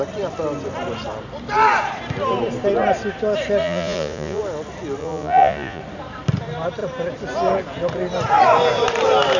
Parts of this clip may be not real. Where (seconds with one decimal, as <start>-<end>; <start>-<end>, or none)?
3.6-4.4; 5.0-5.8